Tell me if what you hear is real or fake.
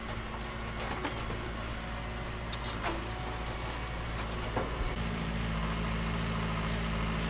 real